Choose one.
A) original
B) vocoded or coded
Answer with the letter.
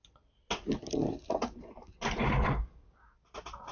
A